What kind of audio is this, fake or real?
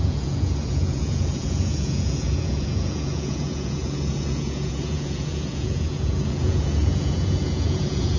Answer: fake